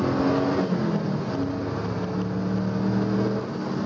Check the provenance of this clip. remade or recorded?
recorded